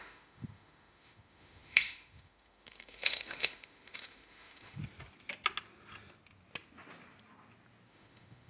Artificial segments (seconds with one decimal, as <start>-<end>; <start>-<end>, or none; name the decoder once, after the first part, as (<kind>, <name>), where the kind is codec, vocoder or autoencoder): 0.0-4.8 (autoencoder, DAC-VAE); 7.9-8.5